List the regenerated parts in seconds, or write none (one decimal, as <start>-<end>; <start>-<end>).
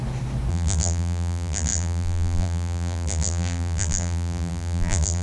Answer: 0.5-5.2